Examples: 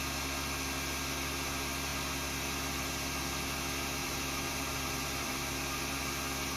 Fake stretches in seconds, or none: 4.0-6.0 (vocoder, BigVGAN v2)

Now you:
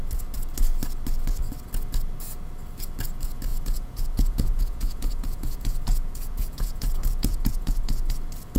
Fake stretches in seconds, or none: 3.5-8.1 (vocoder, Vocos)

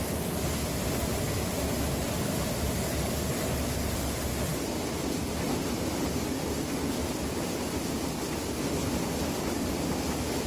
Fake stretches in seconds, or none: 7.0-9.7 (vocoder, BigVGAN v2)

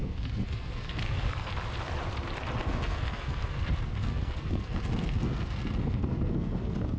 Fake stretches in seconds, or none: 0.0-1.5 (codec, SNAC); 2.6-7.0

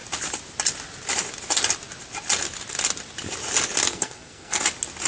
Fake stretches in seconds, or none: 3.9-4.6 (codec, SNAC)

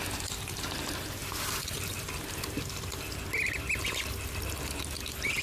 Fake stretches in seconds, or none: none

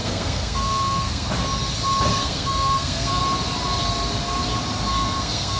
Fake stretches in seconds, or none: 0.0-1.3 (codec, SNAC); 2.1-3.2; 4.9-5.6

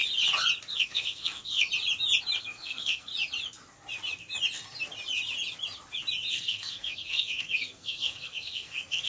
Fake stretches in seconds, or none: 0.7-1.7 (codec, SNAC); 2.4-3.1; 6.3-9.1